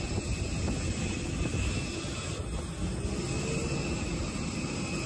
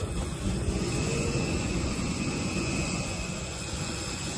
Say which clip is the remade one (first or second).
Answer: second